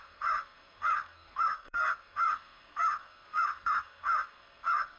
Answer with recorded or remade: remade